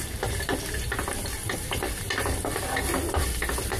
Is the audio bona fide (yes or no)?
yes